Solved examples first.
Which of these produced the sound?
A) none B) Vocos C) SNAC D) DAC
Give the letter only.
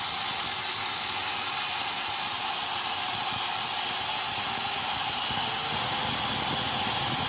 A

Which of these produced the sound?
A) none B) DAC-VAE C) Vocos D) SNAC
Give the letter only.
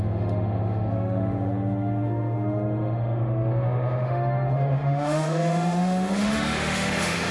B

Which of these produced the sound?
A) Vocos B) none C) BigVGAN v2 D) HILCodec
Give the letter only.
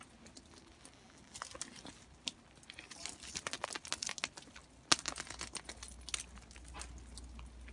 B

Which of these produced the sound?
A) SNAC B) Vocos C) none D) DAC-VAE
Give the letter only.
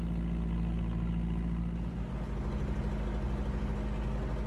C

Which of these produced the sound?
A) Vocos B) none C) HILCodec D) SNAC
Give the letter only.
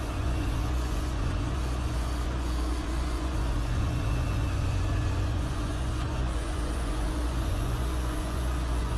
A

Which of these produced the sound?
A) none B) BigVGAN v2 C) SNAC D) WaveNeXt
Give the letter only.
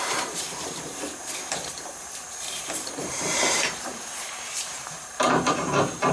B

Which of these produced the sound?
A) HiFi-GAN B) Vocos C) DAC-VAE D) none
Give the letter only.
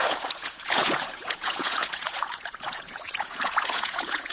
B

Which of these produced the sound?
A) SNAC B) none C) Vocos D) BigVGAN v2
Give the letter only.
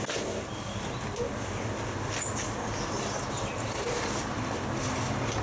B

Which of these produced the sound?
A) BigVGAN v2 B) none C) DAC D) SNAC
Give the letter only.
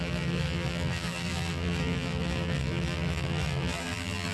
A